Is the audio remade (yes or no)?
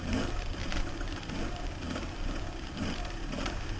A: no